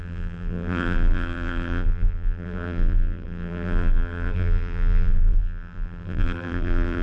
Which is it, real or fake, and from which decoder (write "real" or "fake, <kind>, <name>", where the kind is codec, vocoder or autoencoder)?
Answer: fake, vocoder, BigVGAN v2